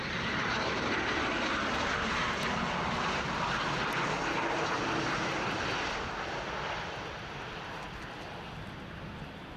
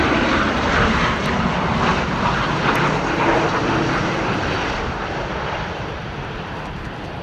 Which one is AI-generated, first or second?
second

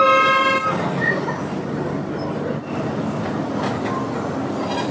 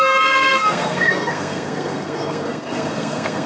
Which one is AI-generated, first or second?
second